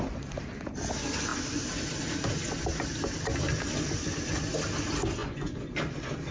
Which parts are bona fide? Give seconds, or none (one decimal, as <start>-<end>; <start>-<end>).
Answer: 0.0-5.2; 5.8-6.3